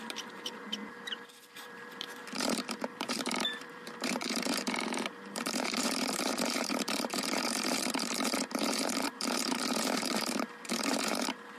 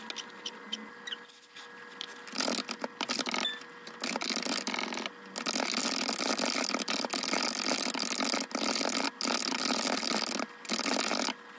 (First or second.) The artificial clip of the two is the first